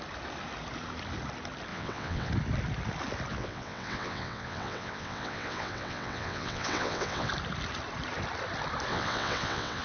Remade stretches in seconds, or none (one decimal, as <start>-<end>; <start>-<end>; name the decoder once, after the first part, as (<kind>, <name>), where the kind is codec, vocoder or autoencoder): 1.7-2.3 (vocoder, WaveNeXt); 3.3-7.3; 8.9-9.8